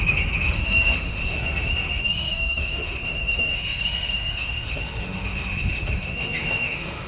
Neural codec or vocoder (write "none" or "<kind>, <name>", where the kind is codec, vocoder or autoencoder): autoencoder, DAC-VAE